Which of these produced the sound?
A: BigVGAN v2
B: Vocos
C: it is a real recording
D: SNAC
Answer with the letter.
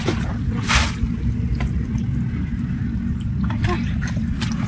C